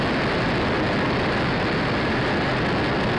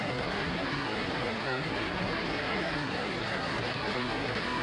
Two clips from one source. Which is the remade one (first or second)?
second